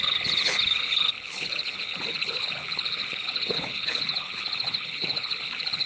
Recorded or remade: remade